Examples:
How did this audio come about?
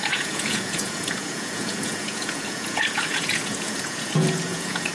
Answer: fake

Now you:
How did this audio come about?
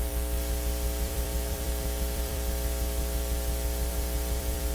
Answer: fake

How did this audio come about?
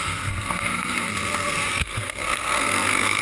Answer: fake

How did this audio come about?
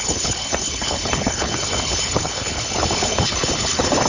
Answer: fake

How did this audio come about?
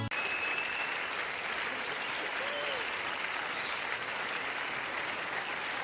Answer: real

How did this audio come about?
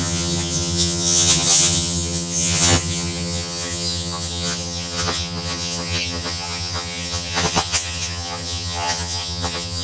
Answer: fake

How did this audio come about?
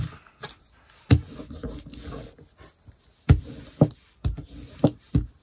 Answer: real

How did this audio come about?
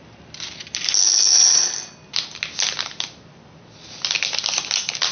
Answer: real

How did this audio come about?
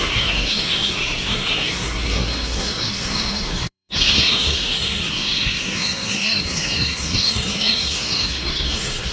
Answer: fake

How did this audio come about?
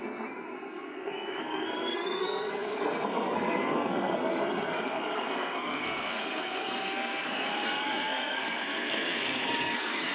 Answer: fake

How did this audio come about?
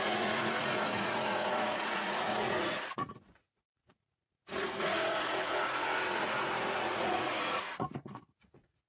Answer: fake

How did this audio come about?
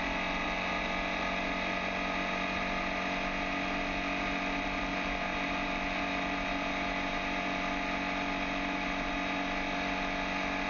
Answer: real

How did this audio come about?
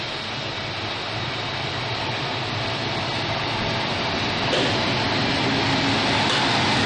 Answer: real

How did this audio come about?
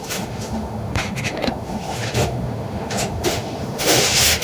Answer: fake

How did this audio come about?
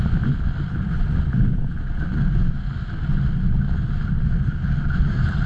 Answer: real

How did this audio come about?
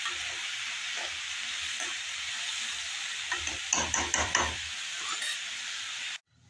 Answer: fake